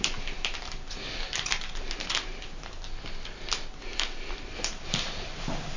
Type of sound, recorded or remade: recorded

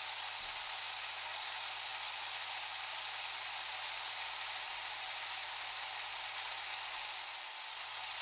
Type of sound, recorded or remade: recorded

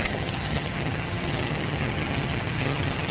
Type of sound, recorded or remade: remade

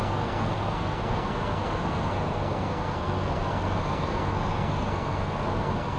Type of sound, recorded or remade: remade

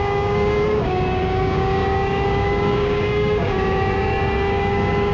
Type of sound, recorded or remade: remade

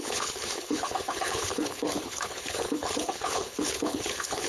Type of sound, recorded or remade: remade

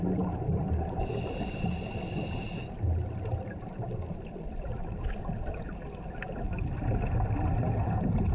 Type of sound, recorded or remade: recorded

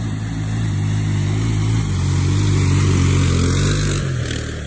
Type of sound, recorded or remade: recorded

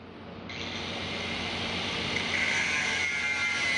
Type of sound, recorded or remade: recorded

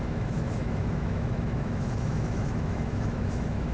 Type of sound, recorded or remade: remade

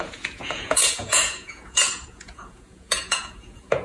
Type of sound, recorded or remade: remade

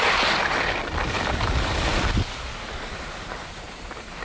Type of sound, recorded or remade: recorded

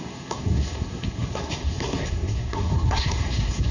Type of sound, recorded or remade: remade